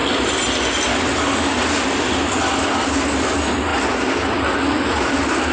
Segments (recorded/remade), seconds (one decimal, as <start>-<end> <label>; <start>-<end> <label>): 0.0-5.5 recorded